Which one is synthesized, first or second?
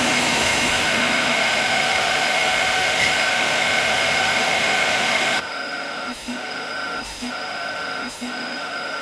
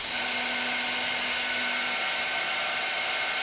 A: first